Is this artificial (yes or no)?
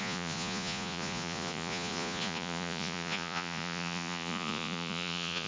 yes